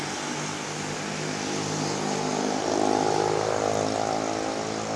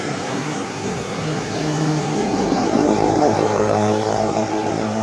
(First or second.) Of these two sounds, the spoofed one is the second